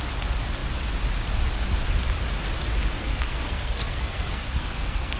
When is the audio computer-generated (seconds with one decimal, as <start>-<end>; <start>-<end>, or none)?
3.0-5.2